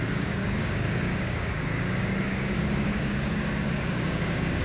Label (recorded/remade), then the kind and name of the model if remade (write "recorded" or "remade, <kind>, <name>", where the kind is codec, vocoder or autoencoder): remade, codec, DAC